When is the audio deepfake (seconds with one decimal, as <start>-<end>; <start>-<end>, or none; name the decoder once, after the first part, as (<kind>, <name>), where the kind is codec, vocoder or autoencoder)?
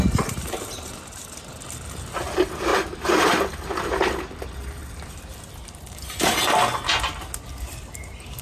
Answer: 4.8-5.8 (vocoder, BigVGAN v2)